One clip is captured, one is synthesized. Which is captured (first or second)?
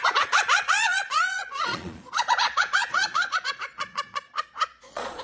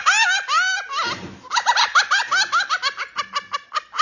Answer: second